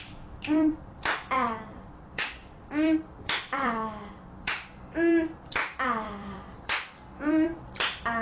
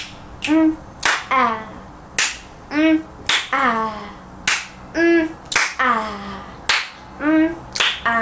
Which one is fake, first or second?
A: first